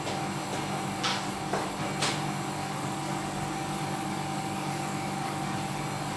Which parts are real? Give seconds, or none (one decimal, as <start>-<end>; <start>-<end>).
0.0-1.1; 1.8-2.6; 5.8-6.2